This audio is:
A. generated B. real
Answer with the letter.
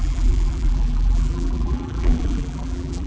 A